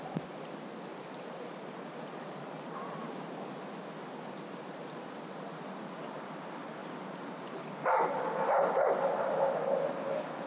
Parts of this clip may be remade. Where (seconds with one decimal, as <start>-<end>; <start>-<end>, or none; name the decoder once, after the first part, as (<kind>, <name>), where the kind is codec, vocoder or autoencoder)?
0.9-3.1 (vocoder, BigVGAN v2); 6.8-7.6